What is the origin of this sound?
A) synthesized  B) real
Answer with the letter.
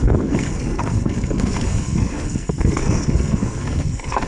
A